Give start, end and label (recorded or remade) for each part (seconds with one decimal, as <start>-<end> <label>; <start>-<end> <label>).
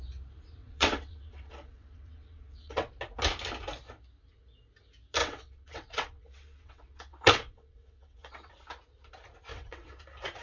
0.0-0.6 recorded; 0.6-2.9 remade; 2.9-5.2 recorded; 5.2-8.5 remade; 8.5-9.5 recorded; 9.5-10.0 remade; 10.0-10.4 recorded